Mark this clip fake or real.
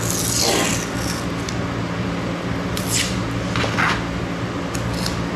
real